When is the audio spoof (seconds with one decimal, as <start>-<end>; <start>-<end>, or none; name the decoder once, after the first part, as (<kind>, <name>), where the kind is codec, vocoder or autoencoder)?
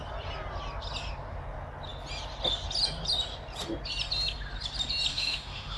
5.1-5.8 (autoencoder, DAC-VAE)